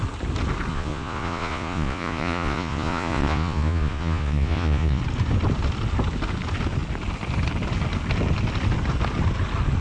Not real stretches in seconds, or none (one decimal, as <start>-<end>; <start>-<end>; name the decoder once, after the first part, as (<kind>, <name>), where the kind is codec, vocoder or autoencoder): 0.7-5.0 (vocoder, Vocos)